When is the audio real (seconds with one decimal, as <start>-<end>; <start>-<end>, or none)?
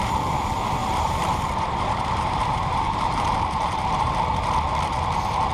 0.0-0.8; 4.1-5.5